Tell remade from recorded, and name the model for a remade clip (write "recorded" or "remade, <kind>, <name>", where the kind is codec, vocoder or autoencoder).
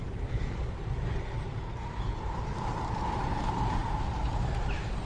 remade, vocoder, BigVGAN v2